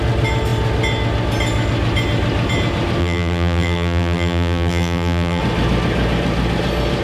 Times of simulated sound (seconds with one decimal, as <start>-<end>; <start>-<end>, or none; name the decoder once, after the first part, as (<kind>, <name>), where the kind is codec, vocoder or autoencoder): 3.0-5.4 (vocoder, BigVGAN v2)

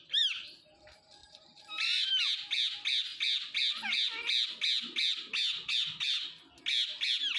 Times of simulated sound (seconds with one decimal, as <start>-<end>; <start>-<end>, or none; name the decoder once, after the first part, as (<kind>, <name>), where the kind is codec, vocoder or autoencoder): 1.2-2.1 (vocoder, BigVGAN v2)

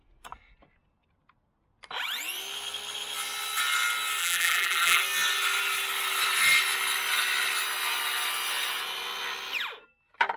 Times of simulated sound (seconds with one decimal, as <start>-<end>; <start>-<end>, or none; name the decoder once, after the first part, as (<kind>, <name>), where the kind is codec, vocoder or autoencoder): 4.2-5.0 (vocoder, BigVGAN v2)

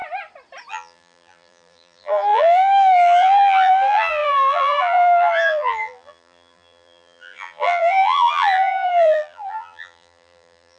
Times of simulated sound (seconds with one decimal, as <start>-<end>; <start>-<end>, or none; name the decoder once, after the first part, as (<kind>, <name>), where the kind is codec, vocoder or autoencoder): 0.7-10.8 (vocoder, BigVGAN v2)

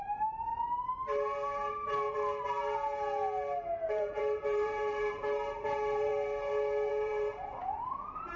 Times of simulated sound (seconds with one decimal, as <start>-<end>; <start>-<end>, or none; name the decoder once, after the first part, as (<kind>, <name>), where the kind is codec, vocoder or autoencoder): 0.0-0.5 (vocoder, BigVGAN v2); 3.9-6.1; 6.9-8.4

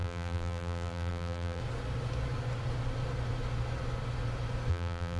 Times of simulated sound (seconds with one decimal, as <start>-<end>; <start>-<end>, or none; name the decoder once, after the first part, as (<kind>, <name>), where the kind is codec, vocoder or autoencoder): 0.0-1.6 (vocoder, BigVGAN v2); 4.7-5.2

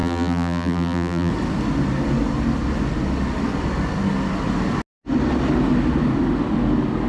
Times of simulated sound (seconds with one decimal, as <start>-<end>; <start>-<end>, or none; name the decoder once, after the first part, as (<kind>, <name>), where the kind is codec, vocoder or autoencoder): 0.0-1.3 (vocoder, BigVGAN v2)